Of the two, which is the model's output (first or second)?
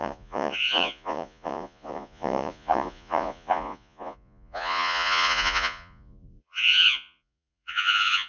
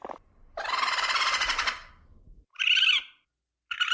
first